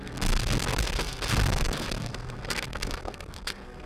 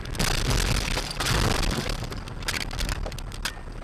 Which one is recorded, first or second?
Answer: second